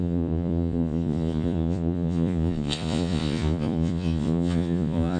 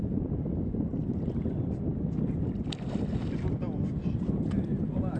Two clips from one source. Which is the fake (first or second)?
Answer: first